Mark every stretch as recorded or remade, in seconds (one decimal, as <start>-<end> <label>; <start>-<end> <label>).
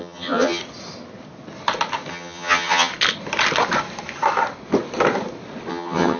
0.0-0.6 remade; 0.6-2.1 recorded; 2.1-2.9 remade; 2.9-5.7 recorded; 5.7-6.2 remade